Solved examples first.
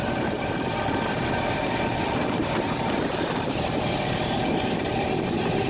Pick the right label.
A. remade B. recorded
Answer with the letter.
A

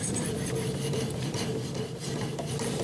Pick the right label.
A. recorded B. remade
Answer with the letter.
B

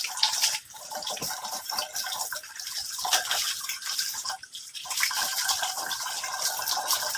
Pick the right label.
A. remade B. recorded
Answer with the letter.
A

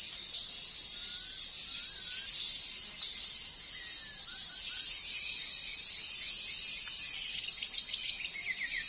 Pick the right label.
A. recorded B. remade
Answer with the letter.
A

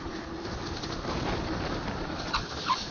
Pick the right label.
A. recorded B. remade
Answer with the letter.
B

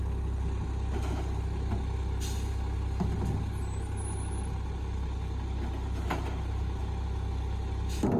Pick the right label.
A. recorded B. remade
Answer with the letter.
A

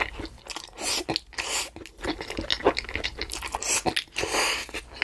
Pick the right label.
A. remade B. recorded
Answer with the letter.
B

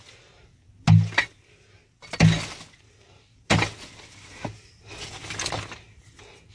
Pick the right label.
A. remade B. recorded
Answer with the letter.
B